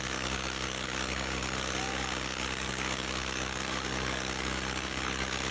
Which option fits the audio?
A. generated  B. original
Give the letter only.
A